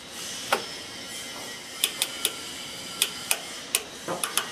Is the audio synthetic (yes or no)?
no